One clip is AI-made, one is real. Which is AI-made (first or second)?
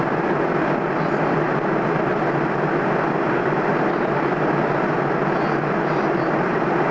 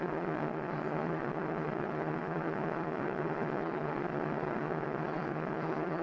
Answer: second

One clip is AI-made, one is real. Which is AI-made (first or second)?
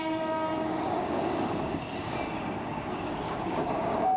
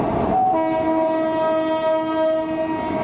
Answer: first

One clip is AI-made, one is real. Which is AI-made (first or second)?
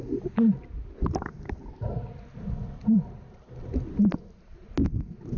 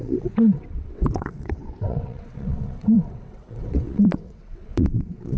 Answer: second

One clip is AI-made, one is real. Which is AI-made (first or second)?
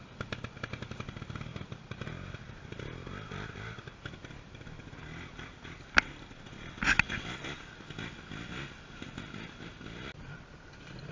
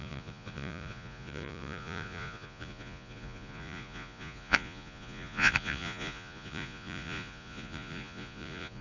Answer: second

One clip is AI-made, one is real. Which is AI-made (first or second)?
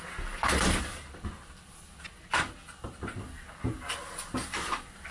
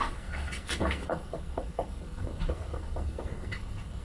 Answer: second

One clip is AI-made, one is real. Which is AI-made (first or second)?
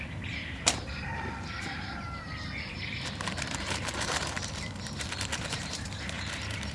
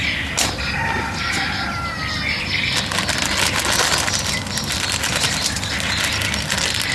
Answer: first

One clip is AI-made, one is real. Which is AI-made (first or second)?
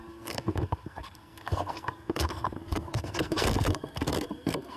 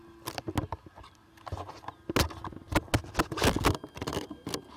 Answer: first